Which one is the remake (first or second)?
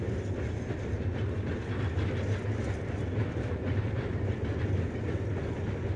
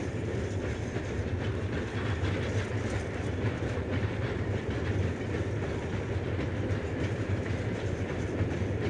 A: second